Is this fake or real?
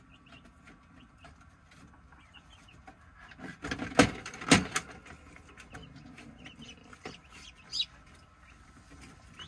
real